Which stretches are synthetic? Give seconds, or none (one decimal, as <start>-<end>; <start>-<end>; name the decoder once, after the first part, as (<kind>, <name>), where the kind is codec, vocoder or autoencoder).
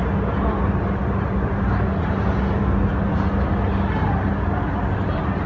none